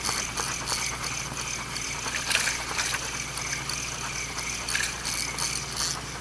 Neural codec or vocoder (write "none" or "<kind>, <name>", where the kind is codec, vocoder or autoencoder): none